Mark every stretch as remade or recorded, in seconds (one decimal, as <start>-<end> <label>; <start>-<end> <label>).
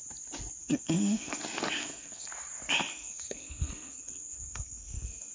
0.0-0.6 recorded; 0.6-1.4 remade; 1.4-1.8 recorded; 1.8-2.3 remade; 2.3-2.9 recorded; 2.9-5.3 remade